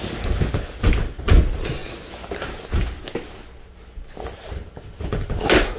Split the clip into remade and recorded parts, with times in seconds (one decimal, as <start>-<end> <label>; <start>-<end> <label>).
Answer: 0.0-5.8 recorded